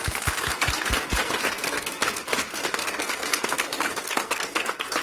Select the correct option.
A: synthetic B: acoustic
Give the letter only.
A